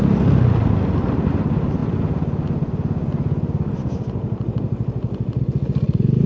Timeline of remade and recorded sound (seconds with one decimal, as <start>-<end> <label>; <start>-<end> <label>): 0.0-6.3 recorded